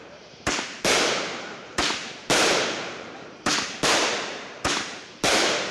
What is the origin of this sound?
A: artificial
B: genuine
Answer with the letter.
A